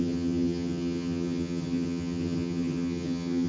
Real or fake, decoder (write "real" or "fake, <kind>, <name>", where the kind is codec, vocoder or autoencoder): fake, vocoder, HiFi-GAN